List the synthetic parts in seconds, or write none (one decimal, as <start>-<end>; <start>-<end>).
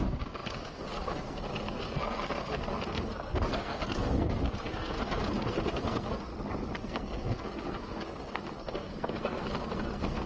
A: 0.0-6.3; 6.8-10.3